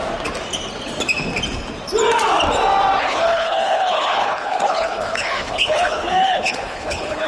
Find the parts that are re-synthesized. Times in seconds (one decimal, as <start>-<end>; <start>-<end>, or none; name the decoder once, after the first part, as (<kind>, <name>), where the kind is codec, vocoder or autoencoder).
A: 3.0-7.3 (codec, HILCodec)